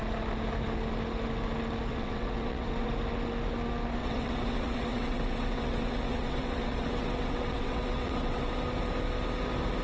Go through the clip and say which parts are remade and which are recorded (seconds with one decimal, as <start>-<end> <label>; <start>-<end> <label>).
0.0-1.9 recorded; 1.9-2.9 remade; 2.9-4.0 recorded; 4.0-8.5 remade; 8.5-9.8 recorded